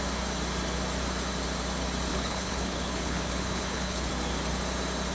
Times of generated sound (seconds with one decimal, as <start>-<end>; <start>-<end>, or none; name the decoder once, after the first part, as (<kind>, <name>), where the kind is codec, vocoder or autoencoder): 2.1-4.1 (codec, HILCodec)